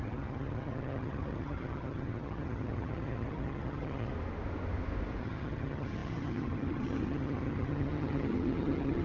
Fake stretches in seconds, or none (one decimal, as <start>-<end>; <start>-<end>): 0.0-4.1; 5.2-9.0